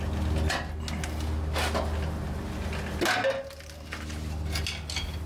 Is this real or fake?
real